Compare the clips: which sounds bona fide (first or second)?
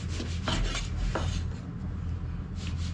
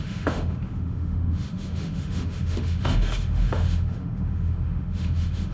first